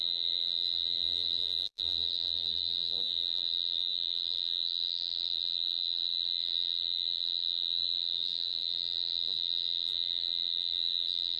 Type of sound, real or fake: fake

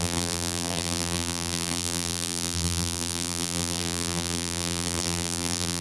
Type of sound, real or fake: fake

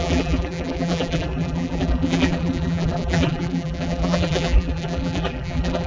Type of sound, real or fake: fake